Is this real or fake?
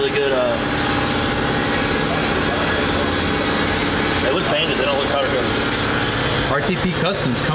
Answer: real